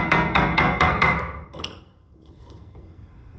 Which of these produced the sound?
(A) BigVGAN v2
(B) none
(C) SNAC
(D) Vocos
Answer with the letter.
C